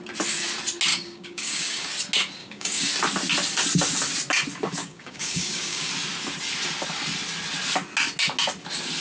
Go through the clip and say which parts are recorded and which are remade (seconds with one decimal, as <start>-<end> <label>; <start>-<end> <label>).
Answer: 0.0-0.9 recorded; 0.9-1.9 remade; 1.9-2.4 recorded; 2.4-2.9 remade; 2.9-4.8 recorded; 4.8-5.9 remade; 5.9-9.0 recorded